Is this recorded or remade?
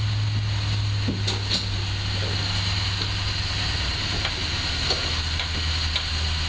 recorded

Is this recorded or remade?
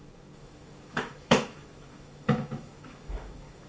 remade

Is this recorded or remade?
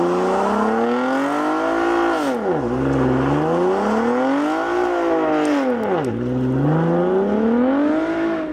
recorded